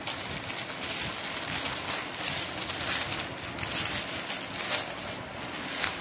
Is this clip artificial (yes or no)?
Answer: no